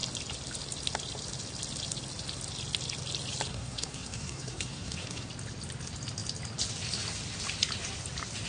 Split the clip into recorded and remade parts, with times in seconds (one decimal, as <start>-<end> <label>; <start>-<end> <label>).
0.0-3.5 recorded; 3.5-5.3 remade; 5.3-8.5 recorded